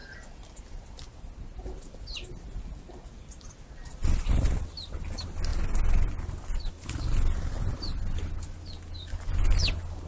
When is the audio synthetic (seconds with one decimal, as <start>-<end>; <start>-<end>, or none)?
none